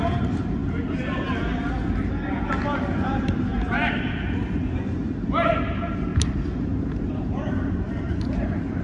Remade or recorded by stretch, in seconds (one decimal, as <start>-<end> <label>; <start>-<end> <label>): 0.0-0.6 remade; 0.6-3.1 recorded; 3.1-6.1 remade; 6.1-6.6 recorded; 6.6-8.8 remade